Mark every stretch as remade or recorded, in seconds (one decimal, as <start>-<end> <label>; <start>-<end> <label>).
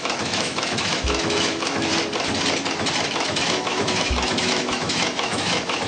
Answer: 0.0-1.9 remade; 1.9-3.1 recorded; 3.1-5.9 remade